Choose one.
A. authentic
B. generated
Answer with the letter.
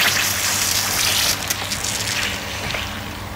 A